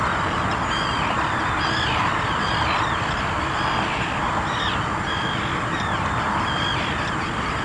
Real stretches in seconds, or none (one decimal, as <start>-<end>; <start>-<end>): 0.0-7.6